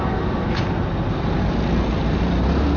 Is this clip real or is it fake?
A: real